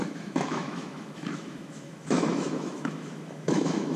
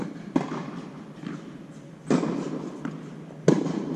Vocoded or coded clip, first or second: first